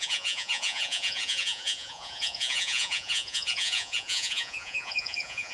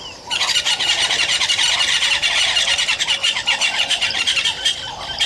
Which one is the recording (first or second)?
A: second